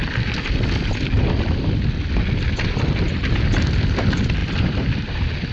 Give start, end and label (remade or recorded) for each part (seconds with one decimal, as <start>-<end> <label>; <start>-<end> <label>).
0.0-5.5 recorded